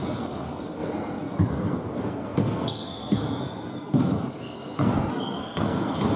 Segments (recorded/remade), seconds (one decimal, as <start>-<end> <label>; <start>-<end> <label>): 0.0-6.2 remade